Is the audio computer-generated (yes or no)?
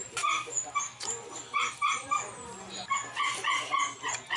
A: no